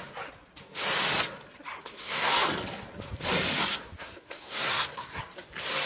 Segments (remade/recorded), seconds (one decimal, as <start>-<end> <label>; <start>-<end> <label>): 0.0-1.7 recorded; 1.7-2.3 remade; 2.3-3.7 recorded; 3.7-5.2 remade; 5.2-5.9 recorded